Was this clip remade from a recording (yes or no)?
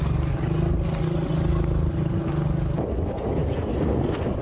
no